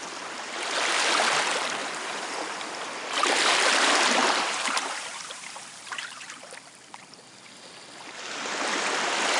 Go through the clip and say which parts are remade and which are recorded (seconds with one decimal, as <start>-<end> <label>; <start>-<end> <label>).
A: 0.0-1.8 recorded; 1.8-2.4 remade; 2.4-4.2 recorded; 4.2-6.4 remade; 6.4-9.4 recorded